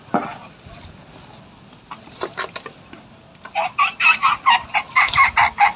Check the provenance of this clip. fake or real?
real